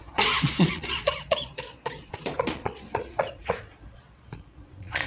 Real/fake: fake